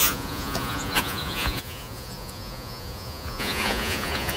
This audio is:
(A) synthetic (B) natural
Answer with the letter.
A